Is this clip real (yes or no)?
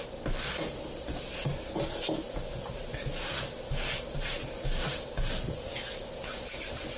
yes